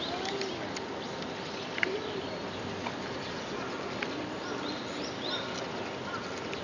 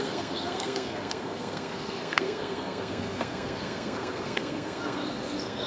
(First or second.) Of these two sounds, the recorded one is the first